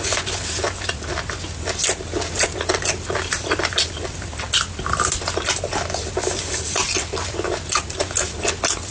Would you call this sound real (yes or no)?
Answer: yes